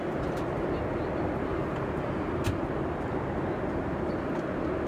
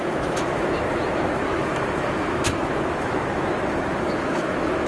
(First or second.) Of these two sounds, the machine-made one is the second